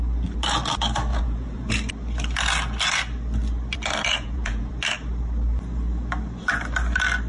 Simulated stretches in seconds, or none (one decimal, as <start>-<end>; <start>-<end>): 1.1-1.7; 4.1-4.7